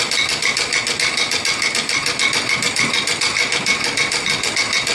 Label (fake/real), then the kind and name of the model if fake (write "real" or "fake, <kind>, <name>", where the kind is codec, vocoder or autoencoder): real